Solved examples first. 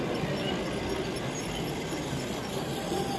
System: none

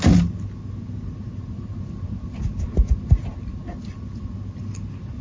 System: none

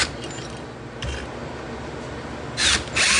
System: none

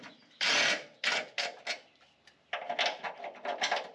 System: none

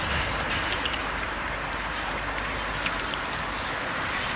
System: vocoder, BigVGAN v2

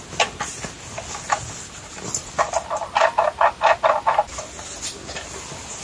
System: none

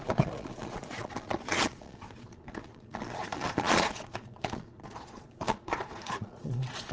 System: vocoder, Vocos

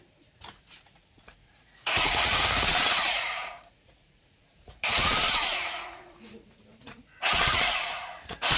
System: vocoder, Vocos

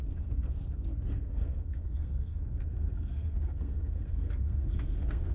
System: codec, SNAC